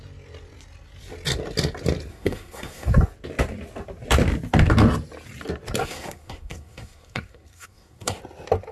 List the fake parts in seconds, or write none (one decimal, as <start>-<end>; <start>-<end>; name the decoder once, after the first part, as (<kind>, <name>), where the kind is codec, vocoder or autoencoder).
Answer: 2.1-2.9 (codec, SNAC); 5.8-8.2